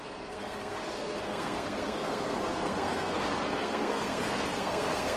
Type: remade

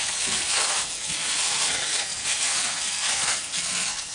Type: remade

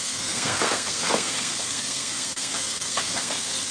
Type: remade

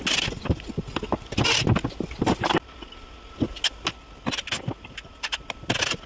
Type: recorded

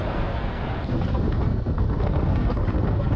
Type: remade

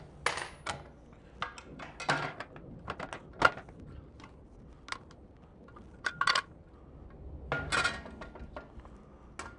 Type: recorded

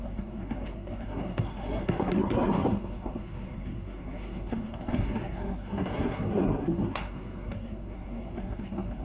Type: remade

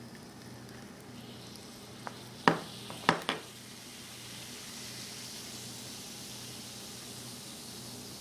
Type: recorded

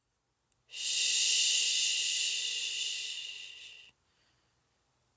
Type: recorded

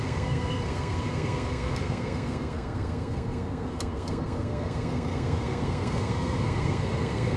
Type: remade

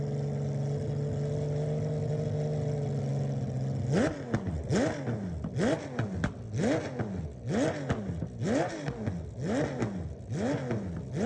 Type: recorded